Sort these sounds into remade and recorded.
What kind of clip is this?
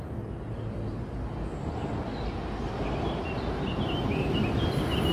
recorded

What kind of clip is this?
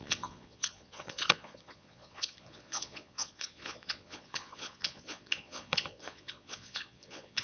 remade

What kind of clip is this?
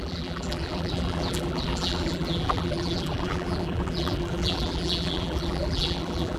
remade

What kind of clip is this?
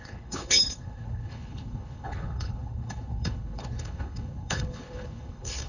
remade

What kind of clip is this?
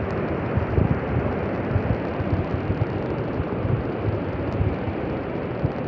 recorded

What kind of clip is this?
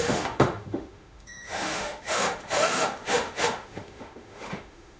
remade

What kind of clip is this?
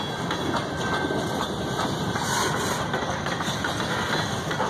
recorded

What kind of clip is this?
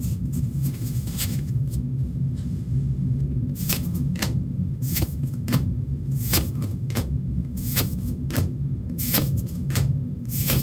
remade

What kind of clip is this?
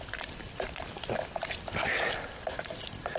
recorded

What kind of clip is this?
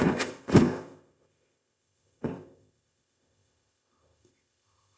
remade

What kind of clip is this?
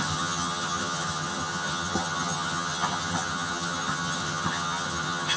remade